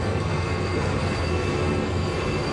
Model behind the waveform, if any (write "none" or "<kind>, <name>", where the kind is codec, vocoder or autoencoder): codec, SNAC